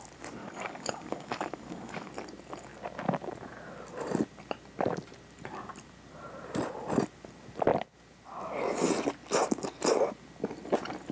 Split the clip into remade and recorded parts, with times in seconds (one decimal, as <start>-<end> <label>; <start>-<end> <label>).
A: 0.0-0.4 recorded; 0.4-2.1 remade; 2.1-11.1 recorded